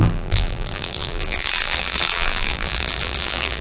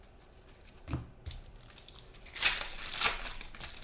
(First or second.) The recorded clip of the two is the second